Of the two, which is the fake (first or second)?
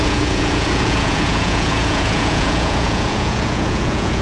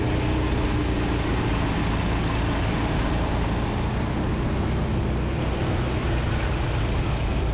first